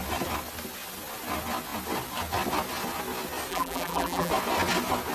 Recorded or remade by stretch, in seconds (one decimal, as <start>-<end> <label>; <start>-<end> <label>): 0.0-3.5 recorded; 3.5-4.3 remade; 4.3-5.1 recorded